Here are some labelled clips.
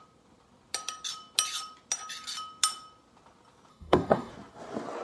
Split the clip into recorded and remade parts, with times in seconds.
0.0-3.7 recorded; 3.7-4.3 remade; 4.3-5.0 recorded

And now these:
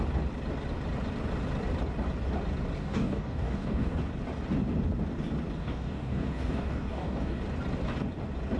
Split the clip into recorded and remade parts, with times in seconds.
0.0-2.8 recorded; 2.8-4.0 remade; 4.0-5.6 recorded; 5.6-7.4 remade; 7.4-8.6 recorded

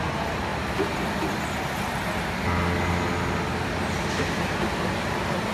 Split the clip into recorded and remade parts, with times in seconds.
0.0-0.5 recorded; 0.5-1.4 remade; 1.4-5.5 recorded

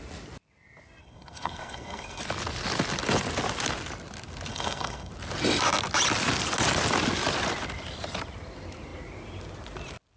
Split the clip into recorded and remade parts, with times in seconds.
0.0-1.0 recorded; 1.0-2.2 remade; 2.2-4.5 recorded; 4.5-5.1 remade; 5.1-10.2 recorded

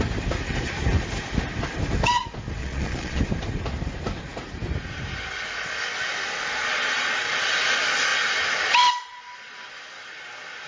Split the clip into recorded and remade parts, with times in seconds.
0.0-2.6 recorded; 2.6-3.2 remade; 3.2-10.7 recorded

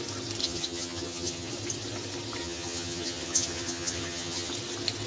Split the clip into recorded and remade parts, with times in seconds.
0.0-0.4 recorded; 0.4-1.5 remade; 1.5-2.4 recorded; 2.4-4.5 remade; 4.5-5.1 recorded